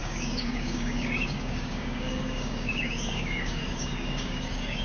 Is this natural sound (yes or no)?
no